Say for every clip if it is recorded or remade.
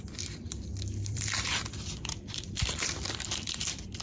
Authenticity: remade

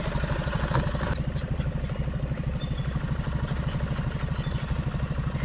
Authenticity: recorded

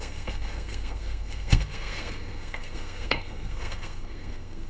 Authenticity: remade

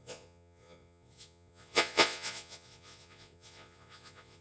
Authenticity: remade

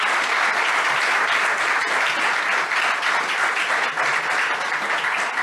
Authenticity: recorded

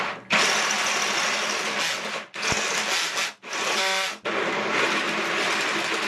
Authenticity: recorded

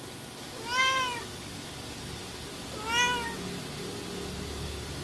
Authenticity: recorded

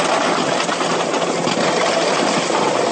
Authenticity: recorded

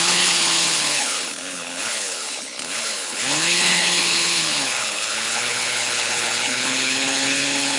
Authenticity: remade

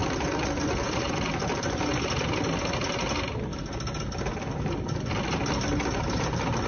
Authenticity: recorded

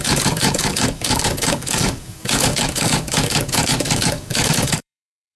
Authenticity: remade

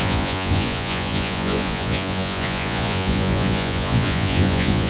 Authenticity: remade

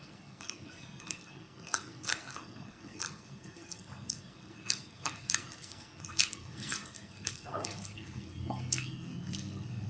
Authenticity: remade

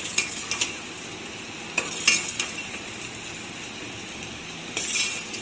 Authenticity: recorded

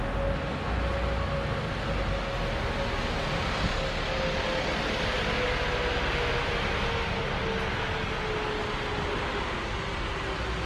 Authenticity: recorded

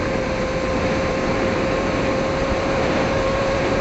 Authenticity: remade